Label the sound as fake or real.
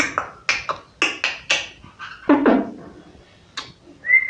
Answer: real